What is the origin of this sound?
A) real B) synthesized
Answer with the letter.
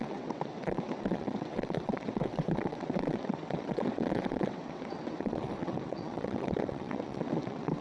B